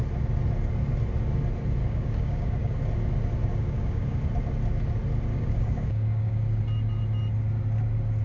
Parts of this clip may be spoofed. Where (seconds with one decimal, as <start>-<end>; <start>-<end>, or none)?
1.8-2.7; 3.5-4.2; 5.3-6.6